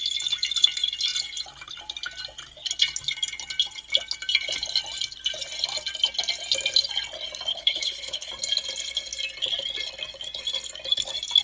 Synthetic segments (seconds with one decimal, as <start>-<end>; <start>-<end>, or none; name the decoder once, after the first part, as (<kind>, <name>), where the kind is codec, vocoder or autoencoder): 7.5-8.3 (codec, HILCodec)

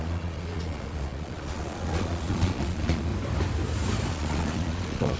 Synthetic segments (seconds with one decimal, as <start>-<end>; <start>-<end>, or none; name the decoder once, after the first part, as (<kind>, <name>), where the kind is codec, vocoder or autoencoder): 0.0-3.1 (vocoder, Vocos); 4.1-5.2

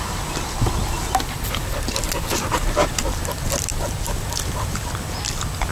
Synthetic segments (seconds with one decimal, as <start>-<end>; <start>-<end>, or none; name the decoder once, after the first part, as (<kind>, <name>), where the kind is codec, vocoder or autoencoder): none

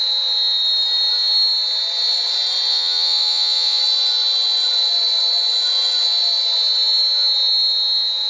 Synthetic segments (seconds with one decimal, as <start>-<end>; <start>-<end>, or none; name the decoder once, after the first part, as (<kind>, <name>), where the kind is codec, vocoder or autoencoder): 2.7-3.8 (vocoder, Vocos)

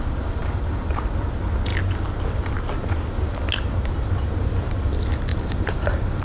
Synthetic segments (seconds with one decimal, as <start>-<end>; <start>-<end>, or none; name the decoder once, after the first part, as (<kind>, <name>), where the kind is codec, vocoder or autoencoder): 0.4-1.0 (vocoder, BigVGAN v2); 5.3-6.2

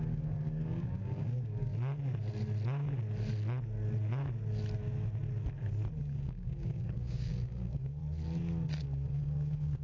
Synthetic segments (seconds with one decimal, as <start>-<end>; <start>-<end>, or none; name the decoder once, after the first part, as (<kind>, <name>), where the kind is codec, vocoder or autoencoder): 0.0-1.7 (codec, DAC); 6.0-8.0; 8.8-9.8

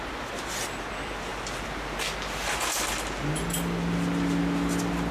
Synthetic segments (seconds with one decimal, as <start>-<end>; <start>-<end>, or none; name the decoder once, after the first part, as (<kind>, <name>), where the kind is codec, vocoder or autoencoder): none

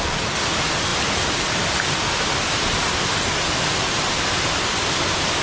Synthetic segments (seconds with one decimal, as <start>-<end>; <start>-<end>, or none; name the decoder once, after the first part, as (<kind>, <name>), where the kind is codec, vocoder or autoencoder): none